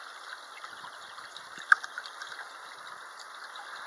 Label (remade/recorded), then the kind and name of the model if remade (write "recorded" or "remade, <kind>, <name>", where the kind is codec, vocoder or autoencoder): remade, vocoder, BigVGAN v2